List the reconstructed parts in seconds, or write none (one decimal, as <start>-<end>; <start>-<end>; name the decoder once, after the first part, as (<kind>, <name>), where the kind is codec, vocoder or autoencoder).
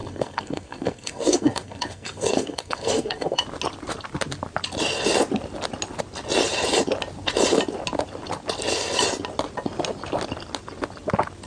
0.0-3.4 (codec, SNAC)